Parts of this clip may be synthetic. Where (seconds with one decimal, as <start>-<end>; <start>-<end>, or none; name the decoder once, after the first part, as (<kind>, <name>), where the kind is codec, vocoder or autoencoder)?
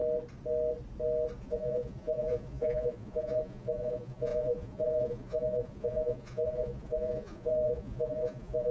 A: 1.4-8.7 (vocoder, Vocos)